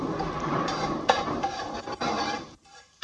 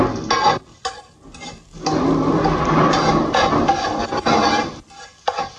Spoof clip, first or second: first